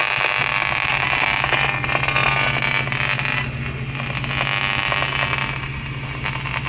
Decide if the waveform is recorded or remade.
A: recorded